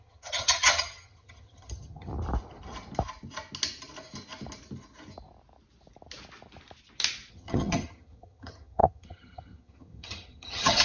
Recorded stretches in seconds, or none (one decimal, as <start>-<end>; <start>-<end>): 2.1-7.3